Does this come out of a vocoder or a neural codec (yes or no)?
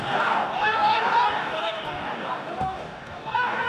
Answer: yes